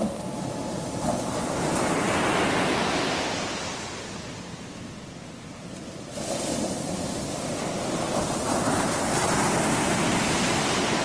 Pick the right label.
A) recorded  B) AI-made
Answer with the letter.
A